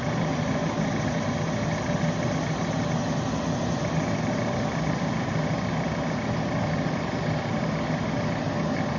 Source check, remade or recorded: recorded